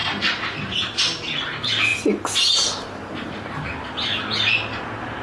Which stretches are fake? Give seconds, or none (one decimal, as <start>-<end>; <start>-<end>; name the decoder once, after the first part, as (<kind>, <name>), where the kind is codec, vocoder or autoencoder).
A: none